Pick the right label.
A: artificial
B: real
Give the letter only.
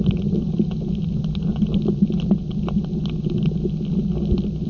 B